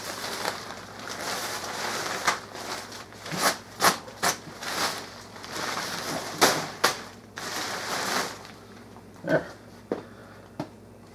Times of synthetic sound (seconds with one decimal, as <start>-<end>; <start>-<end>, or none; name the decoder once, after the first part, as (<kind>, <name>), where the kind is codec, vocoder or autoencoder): 0.0-10.2 (vocoder, BigVGAN v2)